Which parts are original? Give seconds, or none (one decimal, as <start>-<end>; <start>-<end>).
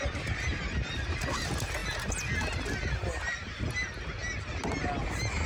0.0-5.5